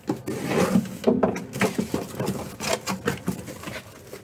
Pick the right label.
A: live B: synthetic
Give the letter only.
A